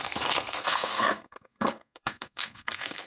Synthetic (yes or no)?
yes